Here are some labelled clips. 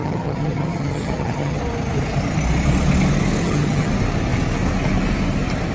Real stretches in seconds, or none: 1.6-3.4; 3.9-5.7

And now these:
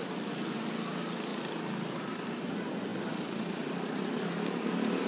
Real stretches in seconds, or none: 0.0-5.1